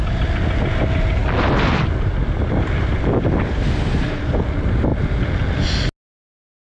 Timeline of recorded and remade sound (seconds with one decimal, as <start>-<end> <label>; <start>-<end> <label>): 0.0-6.8 recorded